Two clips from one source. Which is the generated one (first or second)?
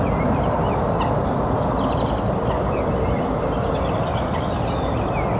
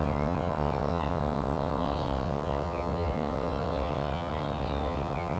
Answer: second